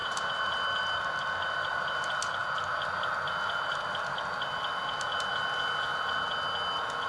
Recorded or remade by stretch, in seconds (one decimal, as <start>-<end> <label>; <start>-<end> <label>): 0.0-7.1 recorded